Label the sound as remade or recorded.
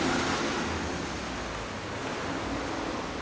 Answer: recorded